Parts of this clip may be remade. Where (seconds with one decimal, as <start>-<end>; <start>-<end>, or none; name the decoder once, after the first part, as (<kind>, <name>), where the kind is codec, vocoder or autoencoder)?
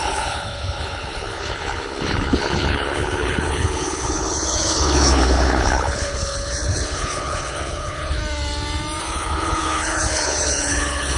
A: 0.0-8.2 (codec, HILCodec); 9.0-11.2